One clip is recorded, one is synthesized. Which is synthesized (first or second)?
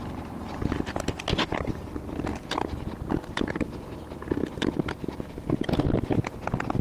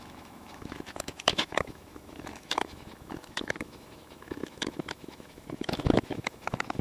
second